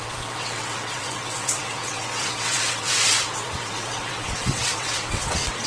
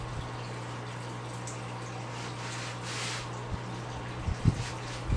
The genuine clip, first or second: second